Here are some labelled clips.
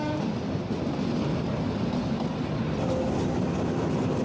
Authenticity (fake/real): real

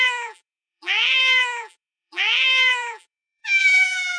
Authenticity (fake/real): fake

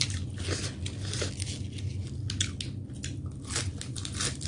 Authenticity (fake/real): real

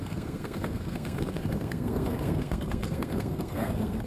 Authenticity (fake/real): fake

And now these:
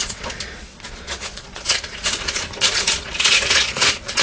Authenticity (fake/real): fake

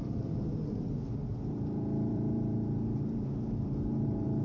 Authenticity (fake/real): fake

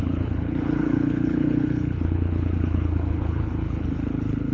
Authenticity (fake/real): fake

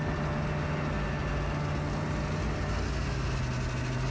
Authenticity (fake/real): real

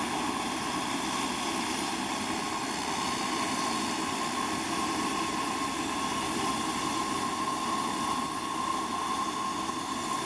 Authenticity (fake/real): real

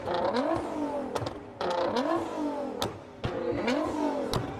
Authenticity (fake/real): real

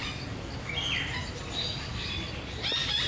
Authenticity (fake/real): real